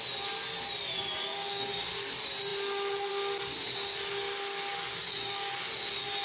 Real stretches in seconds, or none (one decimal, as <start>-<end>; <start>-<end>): 0.0-1.3; 1.9-5.0; 5.5-6.2